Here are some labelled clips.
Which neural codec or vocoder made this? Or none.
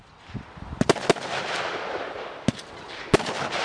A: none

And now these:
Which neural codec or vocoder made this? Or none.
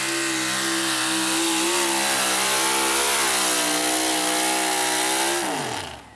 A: none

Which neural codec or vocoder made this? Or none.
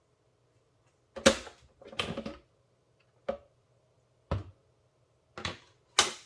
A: none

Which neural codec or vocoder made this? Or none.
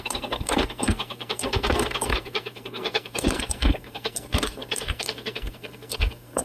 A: codec, SNAC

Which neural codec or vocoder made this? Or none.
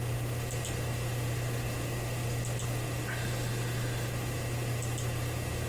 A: none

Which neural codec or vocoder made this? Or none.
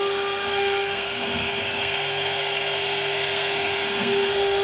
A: codec, SNAC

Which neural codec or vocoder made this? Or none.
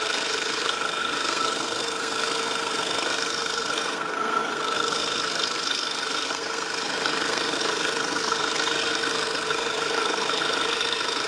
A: codec, SNAC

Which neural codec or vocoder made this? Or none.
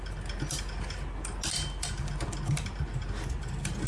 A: none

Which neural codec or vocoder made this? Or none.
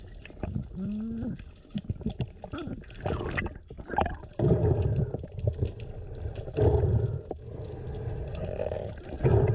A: none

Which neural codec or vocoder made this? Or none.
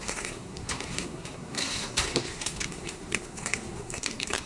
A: codec, SNAC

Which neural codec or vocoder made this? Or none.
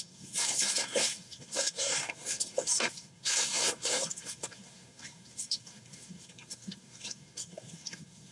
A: codec, SNAC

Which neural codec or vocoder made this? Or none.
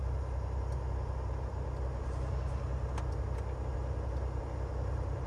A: none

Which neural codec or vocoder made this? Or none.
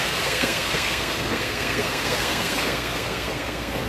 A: codec, SNAC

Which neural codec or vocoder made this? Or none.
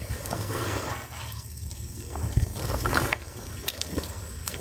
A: codec, SNAC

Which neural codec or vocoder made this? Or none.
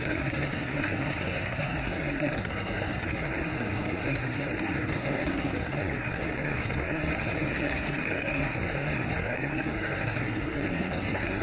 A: codec, SNAC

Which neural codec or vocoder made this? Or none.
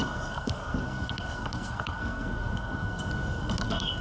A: codec, SNAC